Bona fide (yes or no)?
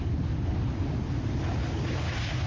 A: yes